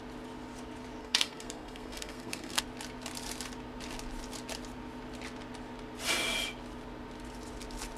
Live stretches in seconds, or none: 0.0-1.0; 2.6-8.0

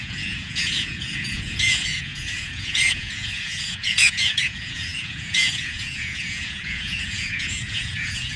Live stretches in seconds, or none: none